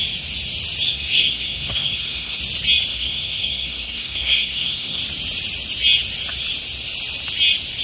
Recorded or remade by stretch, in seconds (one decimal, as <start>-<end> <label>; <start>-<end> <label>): 0.0-0.9 recorded; 0.9-2.4 remade; 2.4-2.9 recorded; 2.9-5.0 remade; 5.0-7.8 recorded